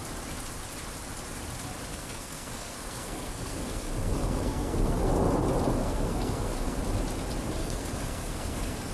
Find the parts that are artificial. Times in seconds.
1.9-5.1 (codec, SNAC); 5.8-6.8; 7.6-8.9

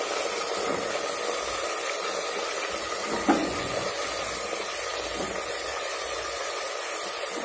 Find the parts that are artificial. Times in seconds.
3.4-4.0 (vocoder, Vocos); 5.7-6.6

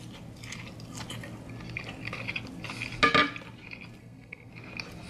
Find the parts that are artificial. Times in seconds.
4.0-4.5 (codec, SNAC)

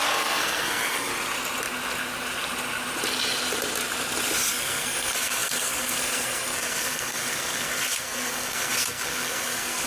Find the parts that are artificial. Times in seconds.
0.0-1.1 (codec, SNAC); 4.5-9.9

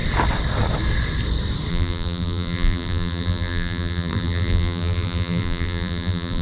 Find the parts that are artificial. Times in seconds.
1.7-6.4 (vocoder, BigVGAN v2)